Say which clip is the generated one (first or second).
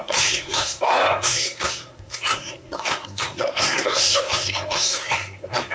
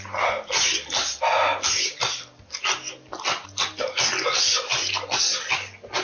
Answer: first